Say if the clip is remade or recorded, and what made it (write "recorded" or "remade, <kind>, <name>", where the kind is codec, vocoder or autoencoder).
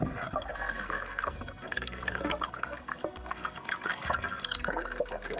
remade, codec, SNAC